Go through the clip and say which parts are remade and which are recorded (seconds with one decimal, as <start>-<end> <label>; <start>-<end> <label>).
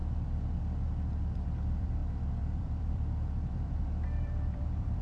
0.0-1.2 recorded; 1.2-5.0 remade